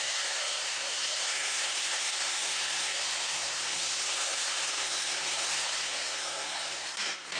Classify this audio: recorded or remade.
remade